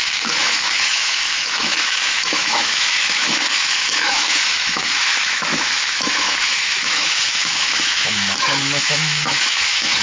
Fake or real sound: fake